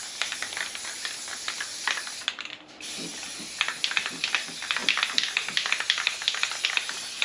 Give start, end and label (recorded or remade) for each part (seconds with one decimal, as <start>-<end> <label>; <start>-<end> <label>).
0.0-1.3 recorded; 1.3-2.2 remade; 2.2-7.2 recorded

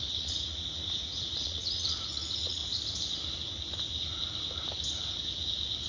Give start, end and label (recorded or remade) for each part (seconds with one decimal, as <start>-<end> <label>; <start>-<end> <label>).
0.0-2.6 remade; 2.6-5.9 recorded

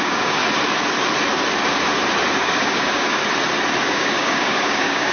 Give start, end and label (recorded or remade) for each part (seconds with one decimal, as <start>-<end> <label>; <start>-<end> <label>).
0.0-0.4 remade; 0.4-2.4 recorded; 2.4-3.2 remade; 3.2-3.8 recorded; 3.8-5.1 remade